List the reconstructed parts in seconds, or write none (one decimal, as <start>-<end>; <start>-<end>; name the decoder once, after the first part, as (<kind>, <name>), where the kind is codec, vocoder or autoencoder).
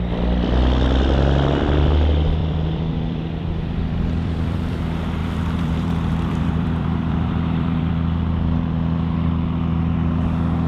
2.4-4.8 (vocoder, BigVGAN v2); 5.2-7.9